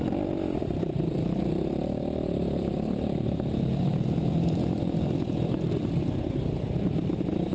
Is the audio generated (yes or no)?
yes